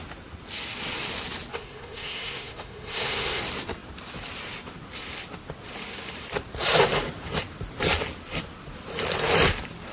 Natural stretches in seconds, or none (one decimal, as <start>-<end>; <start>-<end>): 0.0-1.5; 3.4-9.9